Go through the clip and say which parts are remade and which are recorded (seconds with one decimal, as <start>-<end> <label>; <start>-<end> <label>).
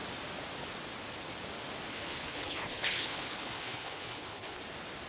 0.0-1.9 recorded; 1.9-4.6 remade; 4.6-5.1 recorded